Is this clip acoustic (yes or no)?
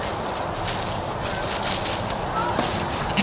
yes